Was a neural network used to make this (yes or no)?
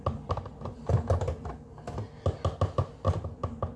no